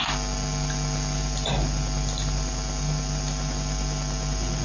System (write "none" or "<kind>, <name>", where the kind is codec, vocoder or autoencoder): none